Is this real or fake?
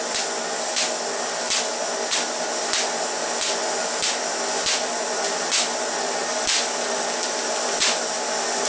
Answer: real